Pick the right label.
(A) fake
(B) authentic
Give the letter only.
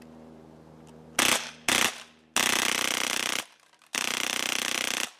B